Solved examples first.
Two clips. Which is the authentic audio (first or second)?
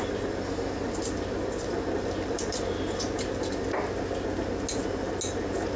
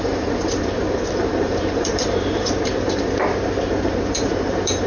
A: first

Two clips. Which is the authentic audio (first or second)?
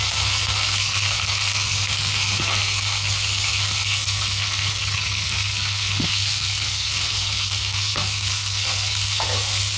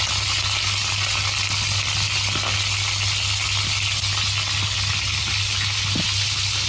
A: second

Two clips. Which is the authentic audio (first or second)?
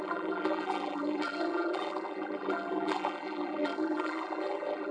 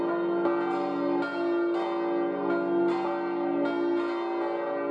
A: second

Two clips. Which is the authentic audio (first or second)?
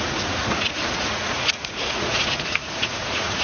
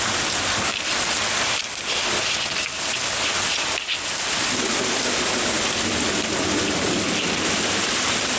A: second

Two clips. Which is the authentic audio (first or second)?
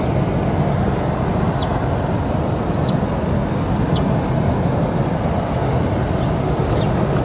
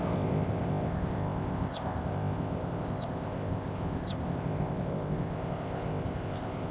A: first